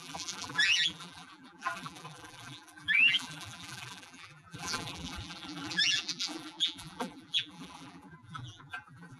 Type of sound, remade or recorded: remade